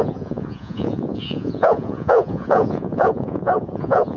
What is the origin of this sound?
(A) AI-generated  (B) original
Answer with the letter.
A